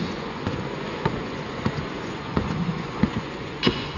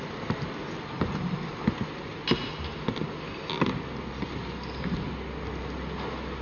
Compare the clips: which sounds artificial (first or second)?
first